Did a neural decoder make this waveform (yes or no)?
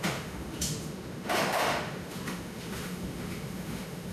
yes